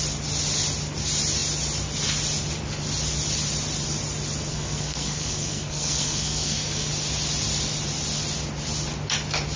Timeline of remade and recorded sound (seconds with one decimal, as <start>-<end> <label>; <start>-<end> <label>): 0.0-4.5 recorded; 4.5-6.9 remade; 6.9-9.6 recorded